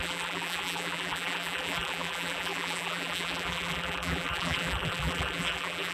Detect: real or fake fake